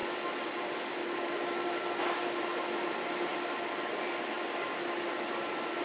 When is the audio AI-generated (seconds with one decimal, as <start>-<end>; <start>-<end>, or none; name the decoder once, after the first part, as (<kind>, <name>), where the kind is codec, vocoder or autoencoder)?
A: none